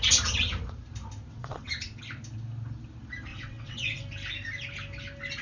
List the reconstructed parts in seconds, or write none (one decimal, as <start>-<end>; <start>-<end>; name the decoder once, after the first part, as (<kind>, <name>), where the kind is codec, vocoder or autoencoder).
1.3-2.0 (vocoder, WaveNeXt); 3.3-4.0